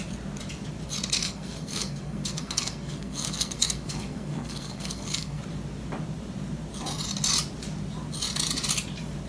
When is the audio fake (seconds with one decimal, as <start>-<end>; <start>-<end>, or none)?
1.2-5.4